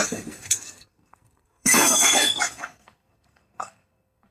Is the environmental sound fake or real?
fake